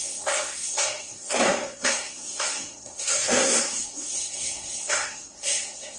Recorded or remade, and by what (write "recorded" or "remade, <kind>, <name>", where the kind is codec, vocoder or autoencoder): remade, codec, SNAC